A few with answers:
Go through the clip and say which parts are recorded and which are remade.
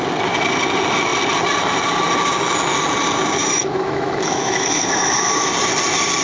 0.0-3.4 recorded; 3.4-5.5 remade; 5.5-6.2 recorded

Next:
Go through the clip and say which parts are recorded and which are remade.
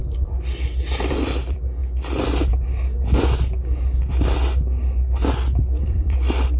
0.0-0.8 recorded; 0.8-1.8 remade; 1.8-5.8 recorded; 5.8-6.6 remade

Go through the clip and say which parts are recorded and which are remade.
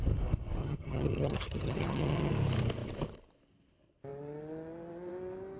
0.0-0.6 recorded; 0.6-2.3 remade; 2.3-5.6 recorded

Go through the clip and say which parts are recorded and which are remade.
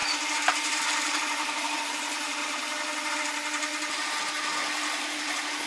0.0-2.4 remade; 2.4-3.1 recorded; 3.1-3.7 remade; 3.7-5.7 recorded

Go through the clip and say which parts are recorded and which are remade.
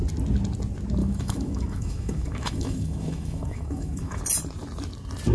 0.0-1.0 recorded; 1.0-4.2 remade; 4.2-5.3 recorded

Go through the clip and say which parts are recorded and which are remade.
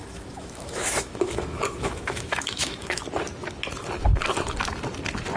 0.0-3.0 remade; 3.0-5.4 recorded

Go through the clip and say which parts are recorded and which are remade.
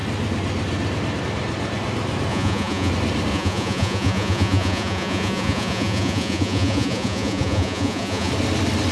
0.0-2.3 recorded; 2.3-2.9 remade; 2.9-3.3 recorded; 3.3-8.3 remade; 8.3-8.9 recorded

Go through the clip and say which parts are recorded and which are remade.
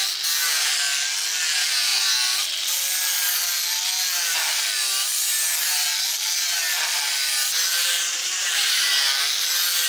0.0-7.7 recorded; 7.7-8.9 remade; 8.9-9.9 recorded